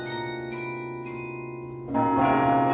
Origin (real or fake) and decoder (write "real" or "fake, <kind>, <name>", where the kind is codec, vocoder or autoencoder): real